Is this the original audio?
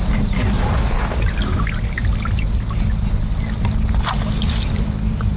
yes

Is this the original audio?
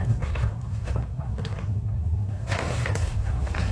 no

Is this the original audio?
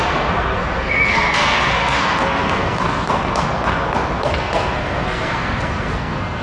no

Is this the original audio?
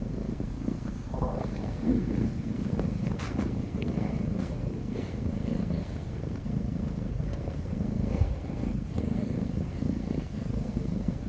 no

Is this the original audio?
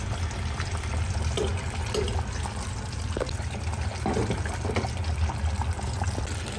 yes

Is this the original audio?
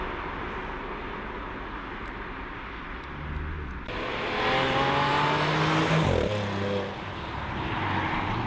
yes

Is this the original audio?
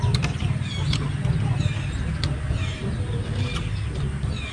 yes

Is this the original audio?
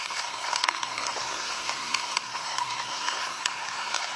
no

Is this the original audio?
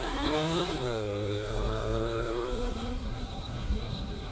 no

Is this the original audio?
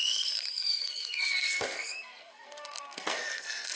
no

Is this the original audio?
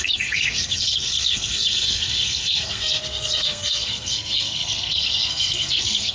no